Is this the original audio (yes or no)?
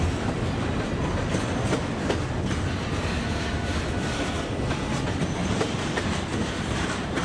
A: yes